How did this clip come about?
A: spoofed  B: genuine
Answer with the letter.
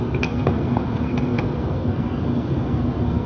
A